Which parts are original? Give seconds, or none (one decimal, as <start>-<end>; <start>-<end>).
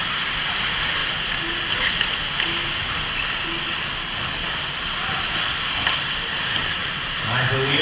0.0-7.8